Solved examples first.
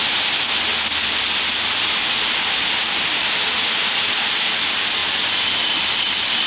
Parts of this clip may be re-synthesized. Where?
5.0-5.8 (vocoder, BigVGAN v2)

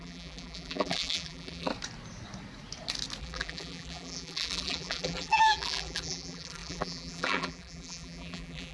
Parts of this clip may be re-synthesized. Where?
0.0-1.7 (vocoder, BigVGAN v2); 3.2-8.7

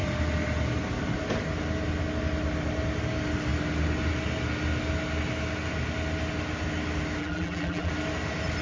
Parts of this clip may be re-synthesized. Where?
7.2-7.9 (vocoder, BigVGAN v2)

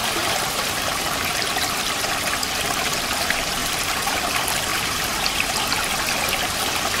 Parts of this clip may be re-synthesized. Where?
0.0-1.3 (vocoder, BigVGAN v2); 3.6-4.3; 4.7-5.6